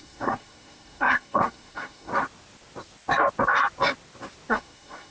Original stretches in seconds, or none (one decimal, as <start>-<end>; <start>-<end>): 2.1-4.5